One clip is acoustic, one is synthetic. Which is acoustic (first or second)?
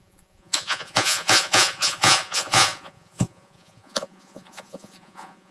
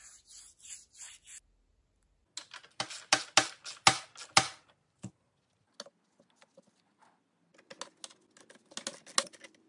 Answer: second